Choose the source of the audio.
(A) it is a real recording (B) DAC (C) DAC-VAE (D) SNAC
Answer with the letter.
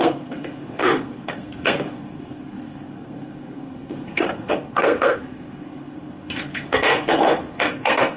D